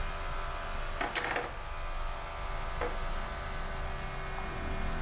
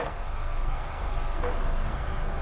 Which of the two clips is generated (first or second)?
second